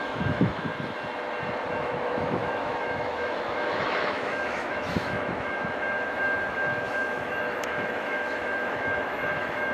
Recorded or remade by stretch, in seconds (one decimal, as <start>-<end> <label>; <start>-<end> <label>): 0.0-0.7 remade; 0.7-1.8 recorded; 1.8-9.7 remade